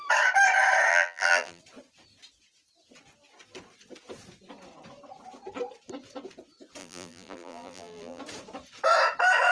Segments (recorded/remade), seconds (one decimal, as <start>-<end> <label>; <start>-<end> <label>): 0.0-0.9 recorded; 0.9-1.6 remade; 1.6-6.8 recorded; 6.8-8.2 remade; 8.2-9.5 recorded